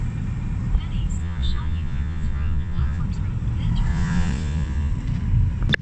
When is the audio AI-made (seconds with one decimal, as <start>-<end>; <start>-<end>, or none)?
1.2-3.0; 3.9-4.9